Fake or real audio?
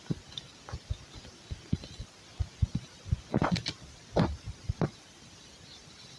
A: real